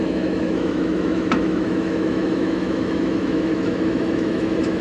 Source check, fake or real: fake